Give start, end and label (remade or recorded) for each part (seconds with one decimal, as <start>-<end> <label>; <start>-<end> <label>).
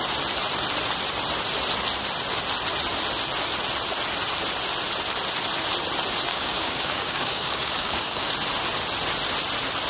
0.0-6.3 recorded; 6.3-8.3 remade; 8.3-9.9 recorded